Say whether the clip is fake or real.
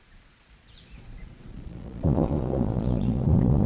fake